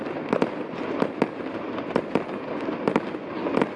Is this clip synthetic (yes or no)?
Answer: no